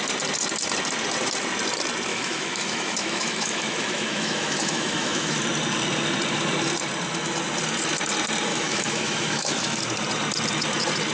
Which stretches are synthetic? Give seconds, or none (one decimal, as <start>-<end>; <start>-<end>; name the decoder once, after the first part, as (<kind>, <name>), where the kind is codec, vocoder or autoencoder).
2.1-5.4 (autoencoder, DAC-VAE); 8.5-9.8